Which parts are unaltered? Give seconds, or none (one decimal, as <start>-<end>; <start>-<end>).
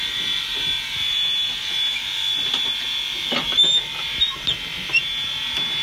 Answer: 0.0-5.8